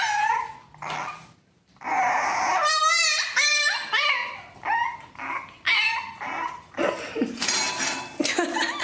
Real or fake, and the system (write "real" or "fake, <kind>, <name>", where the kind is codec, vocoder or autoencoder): real